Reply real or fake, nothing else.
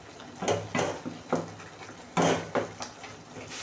real